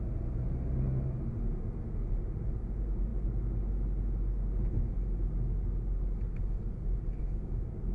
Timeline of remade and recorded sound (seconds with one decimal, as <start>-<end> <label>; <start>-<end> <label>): 0.0-7.9 recorded